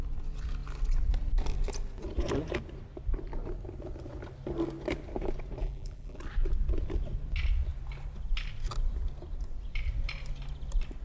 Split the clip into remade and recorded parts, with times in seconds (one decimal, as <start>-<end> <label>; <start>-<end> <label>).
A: 0.0-5.6 recorded; 5.6-6.2 remade; 6.2-11.0 recorded